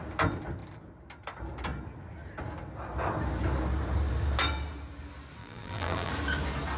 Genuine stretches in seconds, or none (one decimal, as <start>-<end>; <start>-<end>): 0.0-5.4; 6.1-6.8